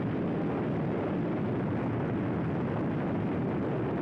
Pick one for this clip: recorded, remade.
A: recorded